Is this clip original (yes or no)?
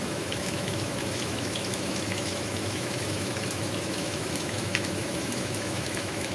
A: no